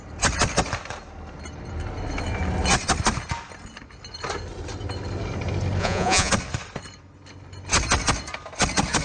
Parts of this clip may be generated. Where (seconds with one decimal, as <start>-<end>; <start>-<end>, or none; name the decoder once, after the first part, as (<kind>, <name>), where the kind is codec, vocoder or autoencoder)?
5.8-6.3 (vocoder, Vocos)